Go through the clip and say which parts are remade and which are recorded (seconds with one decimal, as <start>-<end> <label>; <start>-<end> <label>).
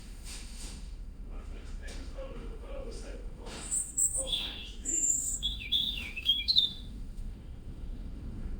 0.0-8.6 remade